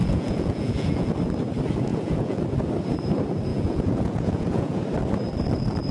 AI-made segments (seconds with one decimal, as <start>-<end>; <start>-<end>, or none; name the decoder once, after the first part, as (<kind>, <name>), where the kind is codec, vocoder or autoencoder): 0.0-1.1 (vocoder, Vocos); 1.9-2.4; 3.5-4.8